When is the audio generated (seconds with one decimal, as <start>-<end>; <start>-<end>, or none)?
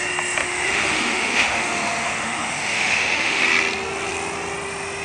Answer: 0.4-3.4